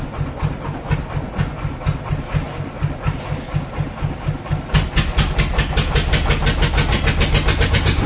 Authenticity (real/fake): real